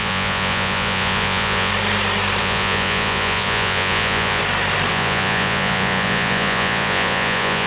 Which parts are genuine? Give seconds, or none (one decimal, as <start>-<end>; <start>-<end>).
1.7-2.4; 4.4-4.9